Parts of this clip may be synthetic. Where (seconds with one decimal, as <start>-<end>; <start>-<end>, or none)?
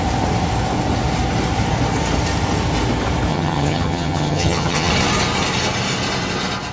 3.3-4.9